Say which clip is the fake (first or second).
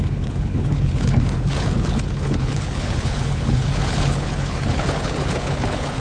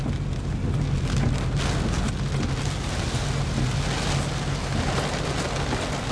first